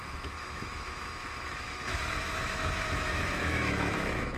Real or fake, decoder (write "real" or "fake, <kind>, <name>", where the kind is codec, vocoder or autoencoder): fake, autoencoder, DAC-VAE